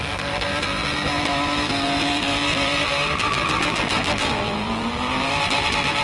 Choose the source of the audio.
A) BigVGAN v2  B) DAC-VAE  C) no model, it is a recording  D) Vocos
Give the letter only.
A